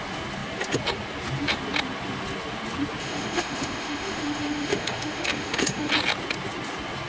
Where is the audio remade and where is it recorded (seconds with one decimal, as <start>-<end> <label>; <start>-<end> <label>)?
0.0-3.0 recorded; 3.0-5.9 remade; 5.9-7.1 recorded